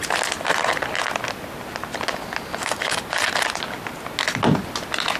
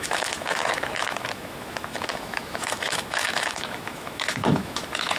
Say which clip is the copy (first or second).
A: second